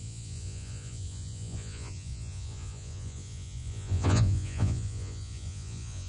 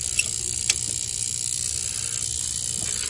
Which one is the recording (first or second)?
second